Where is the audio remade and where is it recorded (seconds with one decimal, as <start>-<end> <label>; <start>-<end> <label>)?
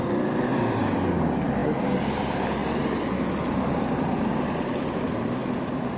0.0-6.0 recorded